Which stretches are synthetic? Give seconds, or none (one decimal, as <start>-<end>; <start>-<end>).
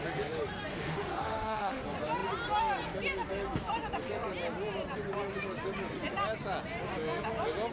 0.7-1.8